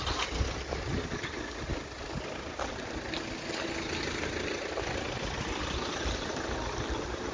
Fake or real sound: real